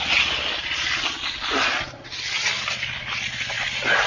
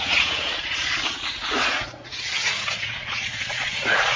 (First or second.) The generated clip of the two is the second